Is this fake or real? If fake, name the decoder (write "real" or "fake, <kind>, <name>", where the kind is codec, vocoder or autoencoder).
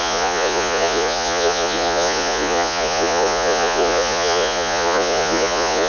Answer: fake, vocoder, Vocos